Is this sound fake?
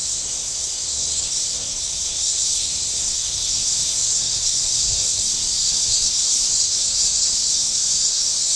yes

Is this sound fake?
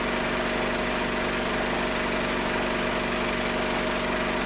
no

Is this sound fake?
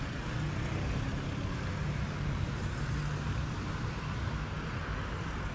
no